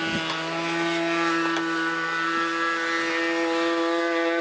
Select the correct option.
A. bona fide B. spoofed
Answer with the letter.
A